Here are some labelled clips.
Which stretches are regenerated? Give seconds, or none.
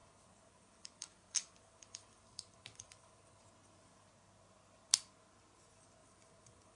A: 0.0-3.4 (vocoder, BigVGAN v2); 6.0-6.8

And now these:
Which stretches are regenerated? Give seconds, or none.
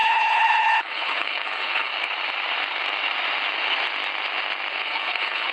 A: 0.0-1.9 (codec, HILCodec); 4.7-5.5